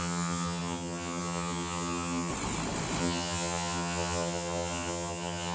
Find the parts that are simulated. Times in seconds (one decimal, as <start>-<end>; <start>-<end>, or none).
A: 0.0-2.3; 3.0-5.5